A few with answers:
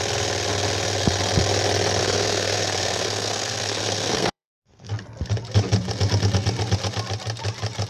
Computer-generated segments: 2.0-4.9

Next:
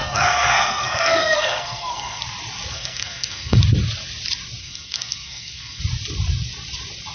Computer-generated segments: 0.0-2.2; 2.7-3.6; 4.6-5.8

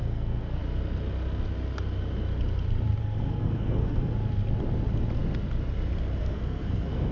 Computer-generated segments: 0.0-0.6; 3.0-4.1; 6.2-7.1

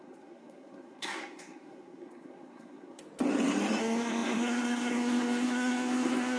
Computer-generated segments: 0.0-3.0; 3.8-6.4